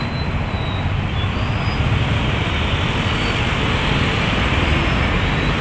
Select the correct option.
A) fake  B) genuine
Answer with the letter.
B